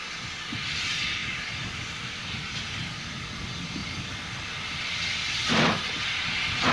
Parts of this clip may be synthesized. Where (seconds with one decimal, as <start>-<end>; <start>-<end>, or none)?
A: none